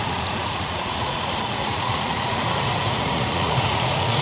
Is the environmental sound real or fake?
fake